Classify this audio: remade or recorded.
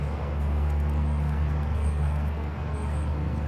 remade